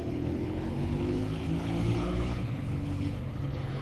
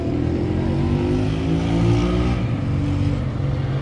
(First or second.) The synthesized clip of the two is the first